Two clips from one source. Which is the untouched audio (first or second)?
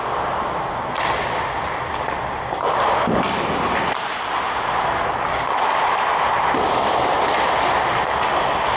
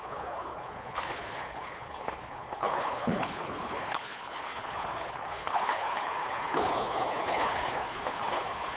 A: first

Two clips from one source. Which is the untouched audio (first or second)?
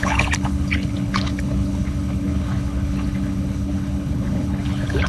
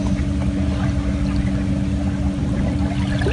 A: second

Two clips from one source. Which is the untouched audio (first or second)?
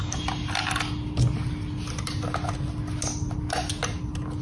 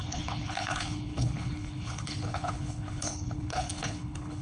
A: first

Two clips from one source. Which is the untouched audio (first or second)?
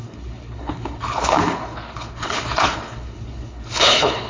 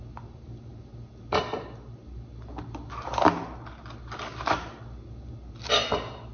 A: second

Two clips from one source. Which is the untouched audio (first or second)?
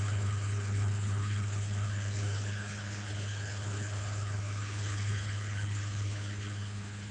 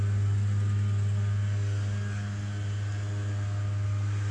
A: second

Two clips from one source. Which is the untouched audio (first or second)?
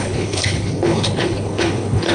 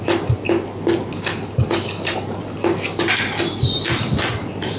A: second